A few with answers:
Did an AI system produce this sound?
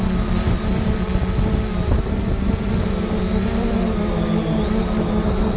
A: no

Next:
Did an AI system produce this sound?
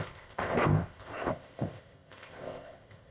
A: yes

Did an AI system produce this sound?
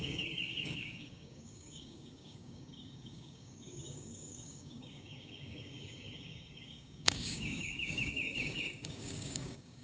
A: yes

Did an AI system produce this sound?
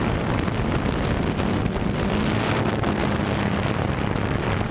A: no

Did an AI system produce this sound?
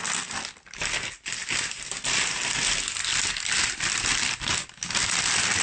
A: no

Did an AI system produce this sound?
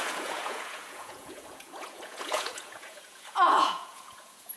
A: yes